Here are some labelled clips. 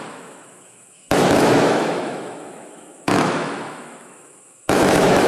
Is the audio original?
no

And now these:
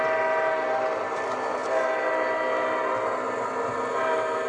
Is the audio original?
yes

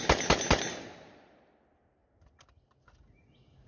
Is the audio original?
yes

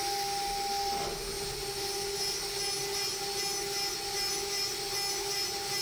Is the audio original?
yes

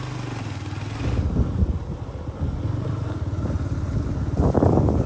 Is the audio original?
yes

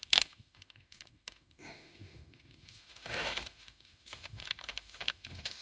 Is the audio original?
no